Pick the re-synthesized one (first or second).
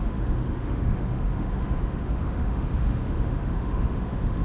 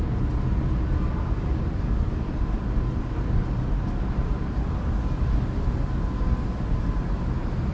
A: first